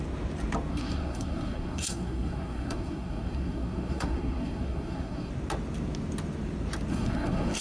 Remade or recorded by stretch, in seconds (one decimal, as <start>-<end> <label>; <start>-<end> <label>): 0.0-0.7 recorded; 0.7-5.3 remade; 5.3-6.9 recorded; 6.9-7.6 remade